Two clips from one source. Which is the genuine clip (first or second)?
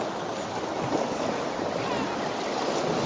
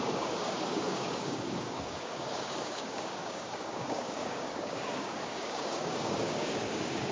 first